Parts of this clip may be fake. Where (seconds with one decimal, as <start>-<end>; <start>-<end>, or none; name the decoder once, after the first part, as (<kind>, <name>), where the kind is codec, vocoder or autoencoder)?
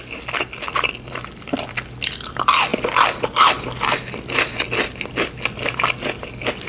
none